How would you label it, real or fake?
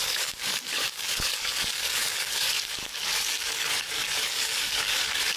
fake